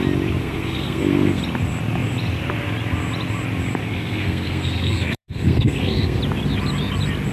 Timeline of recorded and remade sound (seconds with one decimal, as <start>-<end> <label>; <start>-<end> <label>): 0.0-0.4 recorded; 0.4-1.4 remade; 1.4-3.8 recorded; 3.8-6.2 remade; 6.2-7.3 recorded